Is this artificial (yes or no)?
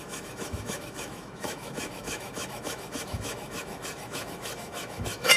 yes